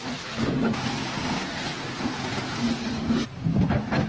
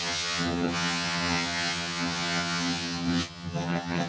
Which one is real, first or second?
first